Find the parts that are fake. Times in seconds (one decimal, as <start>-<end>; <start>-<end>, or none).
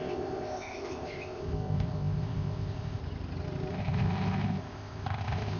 0.0-3.0; 3.7-5.6